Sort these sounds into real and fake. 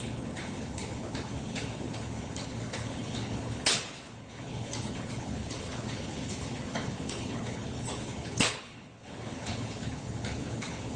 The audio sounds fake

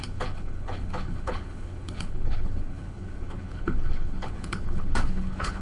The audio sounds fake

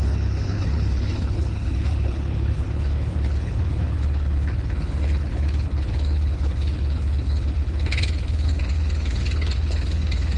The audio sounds fake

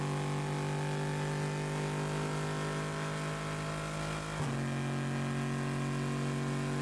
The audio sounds real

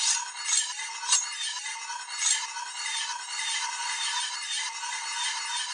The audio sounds real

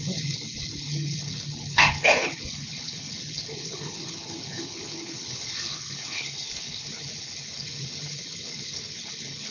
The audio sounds fake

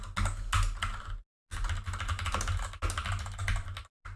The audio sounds real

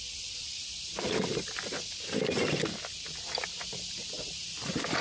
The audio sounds real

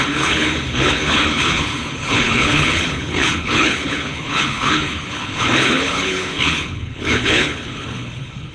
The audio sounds fake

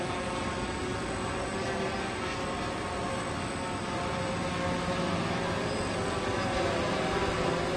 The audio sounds real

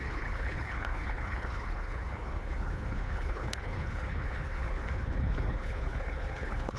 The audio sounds fake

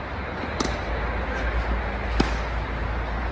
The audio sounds real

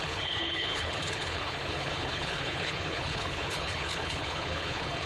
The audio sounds fake